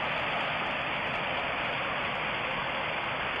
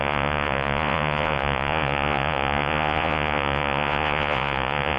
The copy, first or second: second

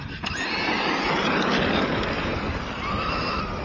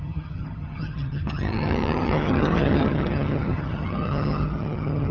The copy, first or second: second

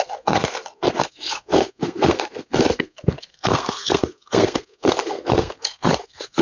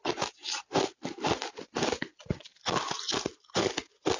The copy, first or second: first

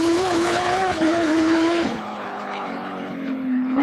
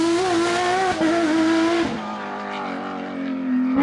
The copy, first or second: first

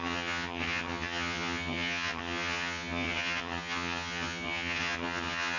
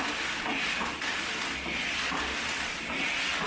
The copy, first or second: first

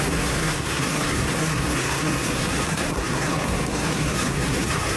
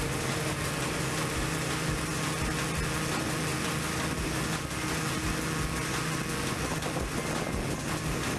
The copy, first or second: first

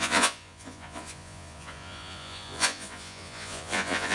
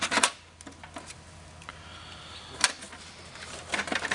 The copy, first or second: first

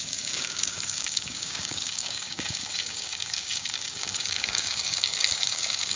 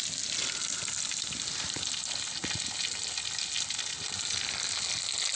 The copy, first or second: first